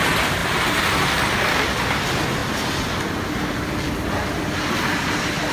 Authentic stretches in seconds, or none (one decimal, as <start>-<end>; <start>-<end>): 0.0-5.5